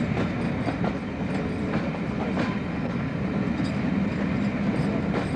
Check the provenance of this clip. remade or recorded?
recorded